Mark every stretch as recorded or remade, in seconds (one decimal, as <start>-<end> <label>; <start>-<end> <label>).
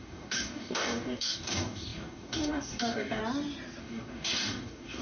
0.0-3.2 remade; 3.2-3.8 recorded; 3.8-5.0 remade